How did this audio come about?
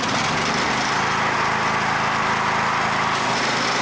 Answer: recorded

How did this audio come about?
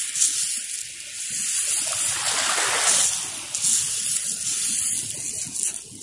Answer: recorded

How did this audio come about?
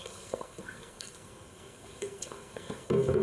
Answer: remade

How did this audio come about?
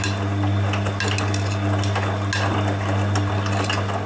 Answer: recorded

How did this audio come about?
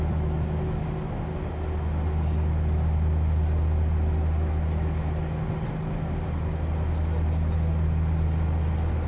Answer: recorded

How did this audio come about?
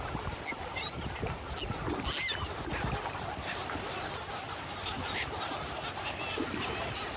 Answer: recorded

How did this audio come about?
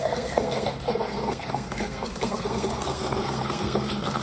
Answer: remade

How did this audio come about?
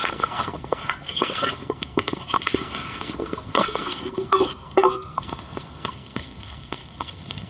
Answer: remade